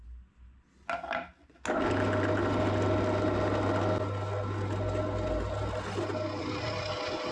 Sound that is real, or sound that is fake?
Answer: real